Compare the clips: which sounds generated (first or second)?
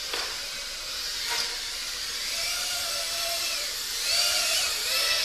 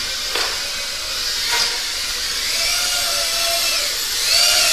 first